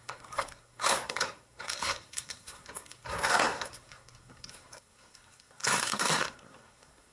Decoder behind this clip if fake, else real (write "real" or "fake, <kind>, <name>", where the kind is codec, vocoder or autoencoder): fake, codec, SNAC